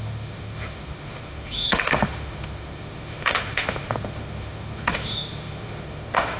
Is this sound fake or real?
fake